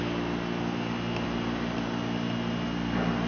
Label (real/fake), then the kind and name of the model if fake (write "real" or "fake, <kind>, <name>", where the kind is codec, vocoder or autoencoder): real